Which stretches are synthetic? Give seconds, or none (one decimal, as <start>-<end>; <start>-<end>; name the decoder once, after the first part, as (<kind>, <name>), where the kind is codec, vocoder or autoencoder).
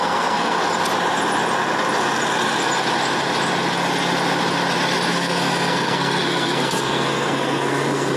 0.0-0.6 (codec, SNAC); 5.1-8.2